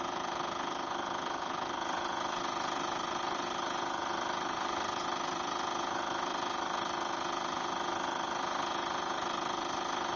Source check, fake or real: fake